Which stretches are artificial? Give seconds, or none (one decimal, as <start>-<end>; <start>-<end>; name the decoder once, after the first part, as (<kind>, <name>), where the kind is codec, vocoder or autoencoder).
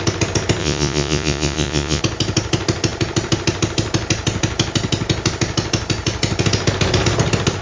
0.6-2.0 (vocoder, Vocos)